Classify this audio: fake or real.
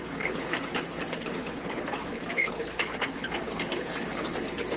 fake